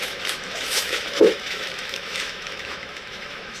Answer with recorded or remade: remade